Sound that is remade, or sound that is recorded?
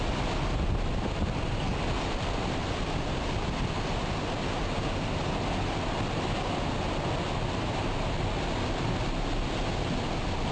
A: recorded